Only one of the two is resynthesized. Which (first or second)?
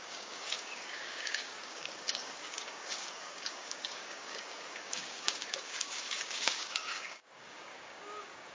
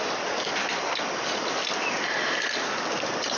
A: first